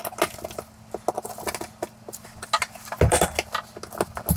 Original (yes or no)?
yes